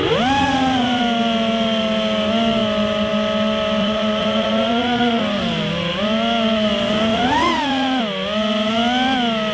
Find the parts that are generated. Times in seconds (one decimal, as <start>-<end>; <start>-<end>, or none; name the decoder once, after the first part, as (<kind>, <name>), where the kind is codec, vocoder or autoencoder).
0.4-1.0 (vocoder, Vocos); 3.8-5.2; 7.1-8.0